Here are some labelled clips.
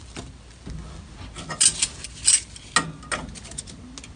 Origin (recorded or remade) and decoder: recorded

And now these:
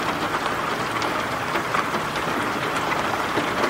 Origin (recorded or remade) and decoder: recorded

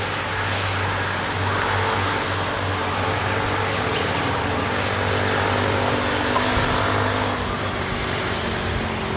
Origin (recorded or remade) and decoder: recorded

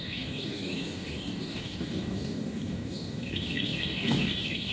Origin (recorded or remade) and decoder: remade, codec, DAC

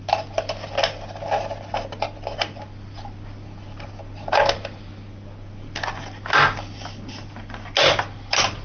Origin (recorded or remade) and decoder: recorded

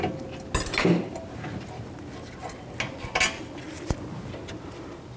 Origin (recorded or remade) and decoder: recorded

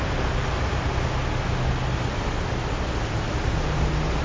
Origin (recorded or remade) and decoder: recorded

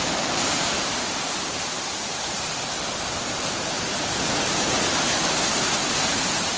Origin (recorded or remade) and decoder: remade, vocoder, BigVGAN v2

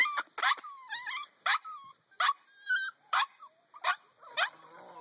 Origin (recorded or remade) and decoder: recorded